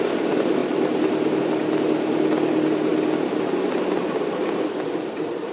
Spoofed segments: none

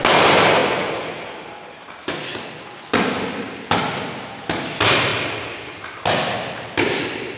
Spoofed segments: none

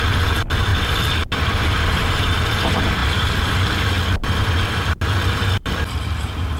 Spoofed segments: 0.7-1.2 (vocoder, BigVGAN v2); 1.6-2.1

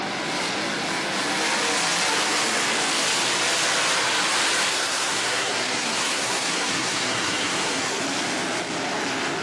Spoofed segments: 4.7-8.0 (codec, SNAC)